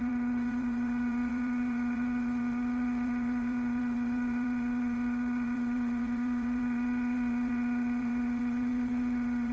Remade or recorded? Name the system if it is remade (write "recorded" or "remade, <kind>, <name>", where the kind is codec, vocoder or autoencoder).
remade, vocoder, WaveNeXt